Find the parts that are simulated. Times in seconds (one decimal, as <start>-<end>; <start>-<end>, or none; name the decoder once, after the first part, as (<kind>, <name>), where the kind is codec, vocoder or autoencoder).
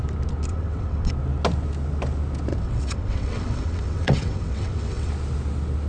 0.5-1.1 (vocoder, WaveNeXt); 2.5-5.1